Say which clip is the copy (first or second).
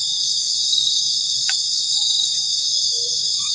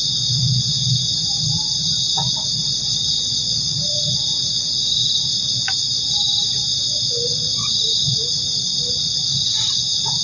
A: first